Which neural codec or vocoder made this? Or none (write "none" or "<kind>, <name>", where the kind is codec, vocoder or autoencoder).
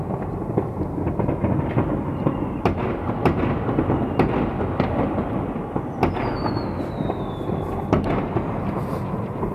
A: none